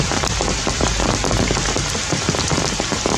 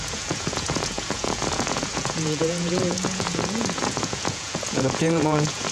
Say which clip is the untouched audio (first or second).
first